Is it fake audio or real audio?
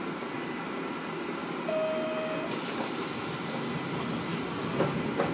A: real